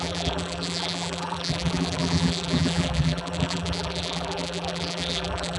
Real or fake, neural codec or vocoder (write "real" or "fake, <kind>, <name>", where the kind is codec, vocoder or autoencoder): fake, vocoder, BigVGAN v2